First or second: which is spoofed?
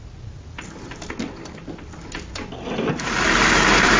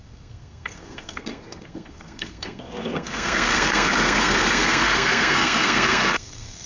second